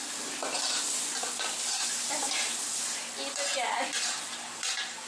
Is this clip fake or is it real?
real